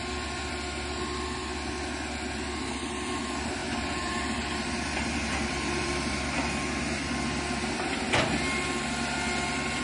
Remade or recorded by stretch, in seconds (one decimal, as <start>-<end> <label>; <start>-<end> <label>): 0.0-3.6 recorded; 3.6-6.2 remade; 6.2-9.8 recorded